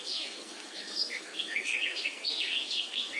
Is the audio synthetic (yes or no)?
yes